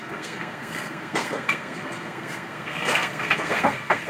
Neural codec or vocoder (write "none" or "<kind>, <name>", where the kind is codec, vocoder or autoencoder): codec, SNAC